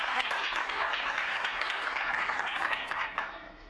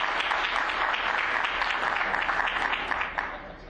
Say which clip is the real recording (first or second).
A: second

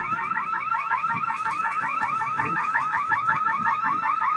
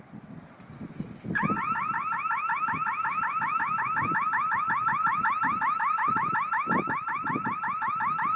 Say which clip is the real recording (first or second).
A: second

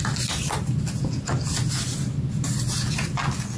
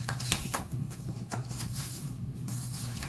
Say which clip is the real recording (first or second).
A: first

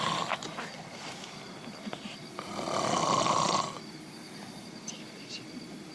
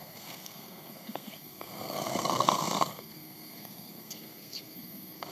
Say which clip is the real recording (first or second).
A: first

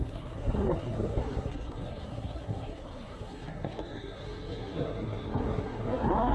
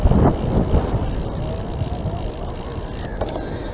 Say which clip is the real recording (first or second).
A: second